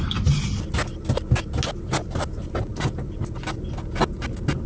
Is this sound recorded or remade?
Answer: recorded